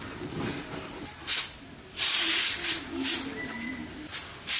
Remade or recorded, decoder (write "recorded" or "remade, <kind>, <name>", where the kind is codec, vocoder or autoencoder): recorded